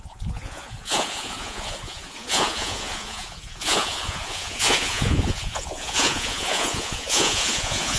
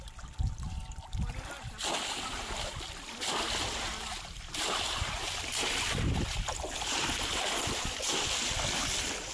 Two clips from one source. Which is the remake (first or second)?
first